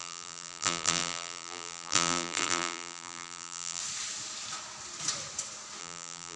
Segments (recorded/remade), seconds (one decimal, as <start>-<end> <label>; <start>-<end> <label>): 0.0-3.8 remade; 3.8-5.8 recorded; 5.8-6.4 remade